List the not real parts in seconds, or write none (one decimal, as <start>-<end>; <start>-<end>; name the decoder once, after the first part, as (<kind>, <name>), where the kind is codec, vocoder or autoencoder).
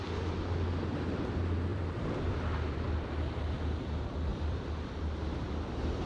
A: 1.7-2.3 (vocoder, BigVGAN v2); 4.3-6.1